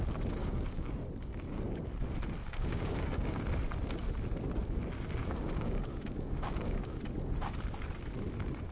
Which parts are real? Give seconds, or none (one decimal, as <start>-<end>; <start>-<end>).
0.0-0.4; 0.9-2.4; 3.4-5.2; 7.0-8.7